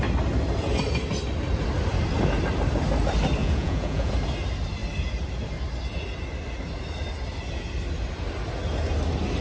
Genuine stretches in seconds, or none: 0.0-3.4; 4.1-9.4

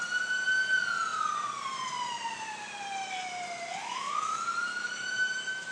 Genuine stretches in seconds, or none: 0.0-3.8; 4.3-4.7

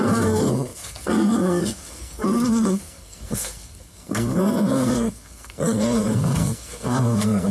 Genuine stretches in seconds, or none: none

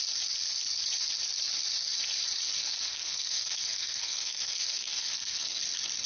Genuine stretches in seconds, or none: 0.0-2.6; 5.6-6.1

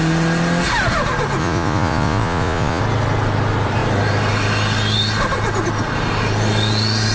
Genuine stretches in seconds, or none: 0.0-1.4; 2.8-7.1

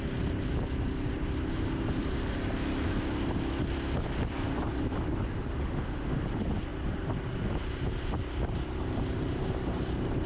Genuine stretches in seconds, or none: 0.0-5.6; 6.2-10.3

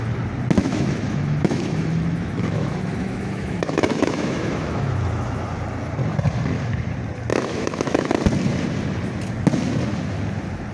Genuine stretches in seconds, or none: 0.0-0.6; 5.4-7.3; 8.1-10.7

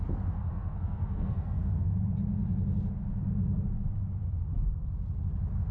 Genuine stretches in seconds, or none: 0.0-0.5; 1.9-5.7